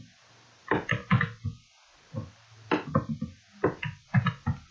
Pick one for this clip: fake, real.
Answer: real